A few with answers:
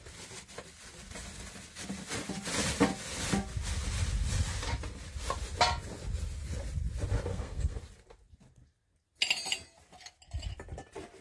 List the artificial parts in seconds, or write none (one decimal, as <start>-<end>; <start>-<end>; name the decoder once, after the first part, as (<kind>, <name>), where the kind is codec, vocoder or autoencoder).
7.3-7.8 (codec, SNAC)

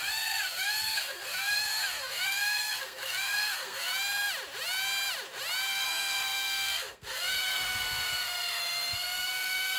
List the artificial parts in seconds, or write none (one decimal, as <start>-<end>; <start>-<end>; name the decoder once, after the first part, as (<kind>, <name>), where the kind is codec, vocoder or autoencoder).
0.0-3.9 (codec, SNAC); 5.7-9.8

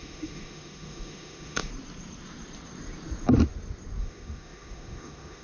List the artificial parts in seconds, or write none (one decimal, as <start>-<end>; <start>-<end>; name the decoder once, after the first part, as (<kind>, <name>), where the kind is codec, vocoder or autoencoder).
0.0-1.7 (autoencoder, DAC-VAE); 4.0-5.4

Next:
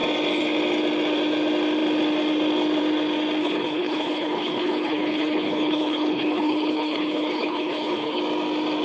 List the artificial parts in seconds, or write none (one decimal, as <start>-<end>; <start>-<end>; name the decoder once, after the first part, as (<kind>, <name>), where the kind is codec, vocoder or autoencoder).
3.4-8.2 (codec, HILCodec)

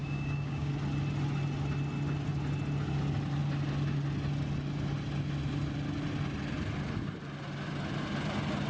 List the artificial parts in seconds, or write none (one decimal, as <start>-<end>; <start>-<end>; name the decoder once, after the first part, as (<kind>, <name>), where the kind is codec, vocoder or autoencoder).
0.0-0.7 (codec, DAC)